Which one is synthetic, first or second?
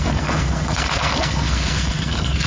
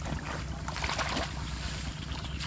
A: first